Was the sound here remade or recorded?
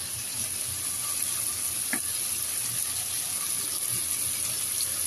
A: recorded